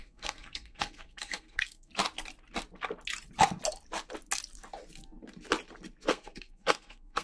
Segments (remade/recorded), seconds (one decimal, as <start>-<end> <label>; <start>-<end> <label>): 0.0-1.9 remade; 1.9-6.1 recorded; 6.1-7.2 remade